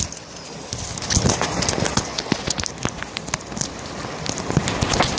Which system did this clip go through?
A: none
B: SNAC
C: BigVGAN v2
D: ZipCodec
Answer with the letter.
A